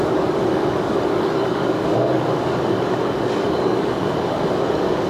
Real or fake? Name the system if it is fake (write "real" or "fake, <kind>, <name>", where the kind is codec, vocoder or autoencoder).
fake, codec, DAC